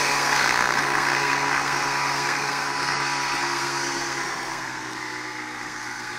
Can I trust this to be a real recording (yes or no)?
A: no